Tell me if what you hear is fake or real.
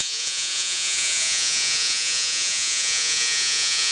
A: fake